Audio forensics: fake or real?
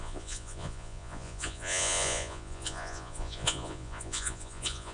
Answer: fake